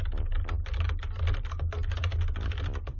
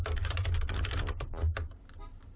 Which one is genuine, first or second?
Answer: first